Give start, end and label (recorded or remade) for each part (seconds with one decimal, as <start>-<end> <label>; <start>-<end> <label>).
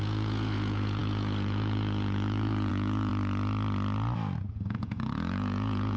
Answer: 0.0-3.1 remade; 3.1-4.5 recorded; 4.5-6.0 remade